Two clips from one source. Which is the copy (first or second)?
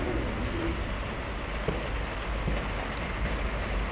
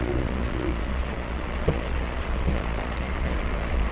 second